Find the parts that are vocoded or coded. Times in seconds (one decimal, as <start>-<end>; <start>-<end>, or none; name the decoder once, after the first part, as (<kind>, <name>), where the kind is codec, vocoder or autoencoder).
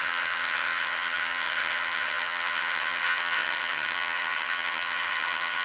0.0-5.6 (vocoder, HiFi-GAN)